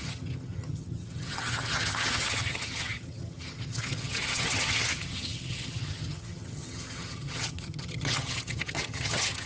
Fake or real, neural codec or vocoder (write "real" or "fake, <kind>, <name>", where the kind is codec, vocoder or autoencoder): fake, vocoder, HiFi-GAN